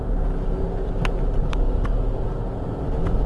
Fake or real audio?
real